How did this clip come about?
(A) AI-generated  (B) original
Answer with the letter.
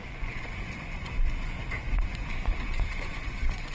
A